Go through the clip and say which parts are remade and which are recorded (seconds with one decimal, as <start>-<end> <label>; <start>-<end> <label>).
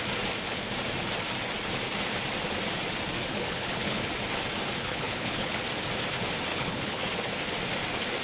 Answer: 0.0-3.3 recorded; 3.3-4.1 remade; 4.1-4.8 recorded; 4.8-5.6 remade; 5.6-6.5 recorded; 6.5-7.1 remade; 7.1-8.2 recorded